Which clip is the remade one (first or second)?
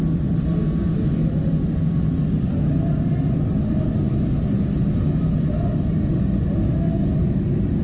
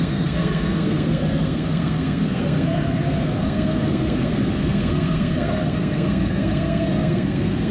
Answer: second